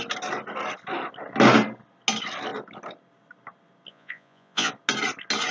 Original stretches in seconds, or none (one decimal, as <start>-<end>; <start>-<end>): 0.0-3.9; 4.7-5.5

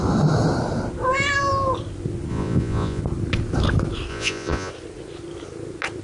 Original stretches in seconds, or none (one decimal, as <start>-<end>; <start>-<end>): 0.0-2.3; 3.0-4.1; 4.7-6.0

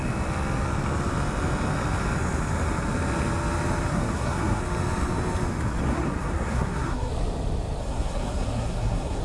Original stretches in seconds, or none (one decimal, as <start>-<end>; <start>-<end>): 0.0-3.9; 4.6-5.9; 7.1-7.8

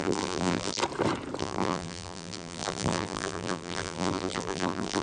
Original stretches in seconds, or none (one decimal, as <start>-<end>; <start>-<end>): 0.8-1.4

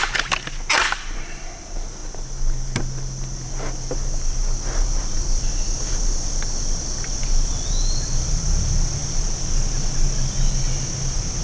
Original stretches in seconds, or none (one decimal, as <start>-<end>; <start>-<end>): 0.0-11.4

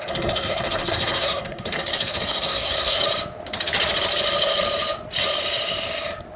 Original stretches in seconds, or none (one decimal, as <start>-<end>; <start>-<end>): 3.0-6.4

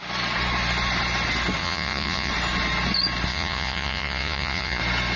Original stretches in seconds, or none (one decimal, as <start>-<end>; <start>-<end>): 0.0-1.6; 2.3-3.3; 4.8-5.2

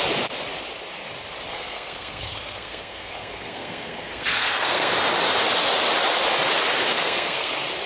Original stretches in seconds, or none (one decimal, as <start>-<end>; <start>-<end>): 0.0-1.5; 4.9-6.9; 7.5-7.9